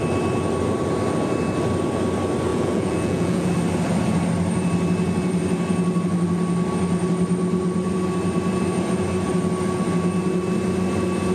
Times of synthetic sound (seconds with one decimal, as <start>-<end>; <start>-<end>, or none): 2.5-3.5